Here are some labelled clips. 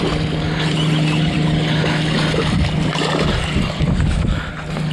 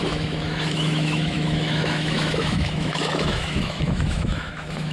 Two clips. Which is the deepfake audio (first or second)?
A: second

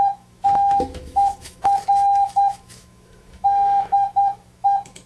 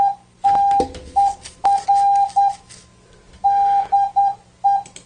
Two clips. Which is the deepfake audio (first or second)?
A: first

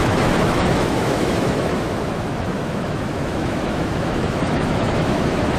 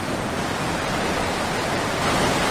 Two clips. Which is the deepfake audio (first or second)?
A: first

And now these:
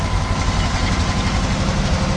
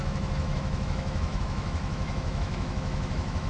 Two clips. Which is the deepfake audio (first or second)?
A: second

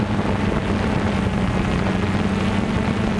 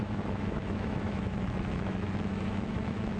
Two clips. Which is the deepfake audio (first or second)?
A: second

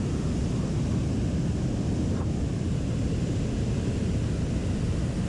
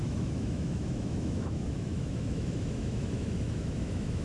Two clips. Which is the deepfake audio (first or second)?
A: second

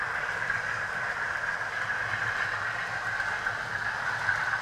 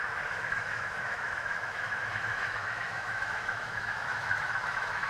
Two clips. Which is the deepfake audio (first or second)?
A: second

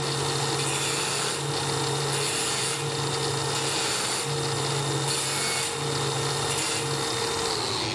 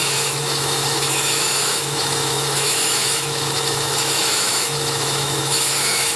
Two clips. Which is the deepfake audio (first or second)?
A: second